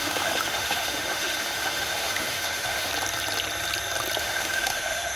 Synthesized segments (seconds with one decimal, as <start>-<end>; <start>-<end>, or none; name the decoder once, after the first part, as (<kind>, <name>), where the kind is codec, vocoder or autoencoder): 0.0-2.9 (autoencoder, DAC-VAE); 4.2-5.2